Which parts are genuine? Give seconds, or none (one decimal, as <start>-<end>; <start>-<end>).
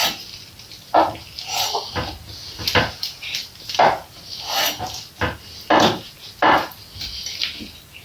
0.0-8.0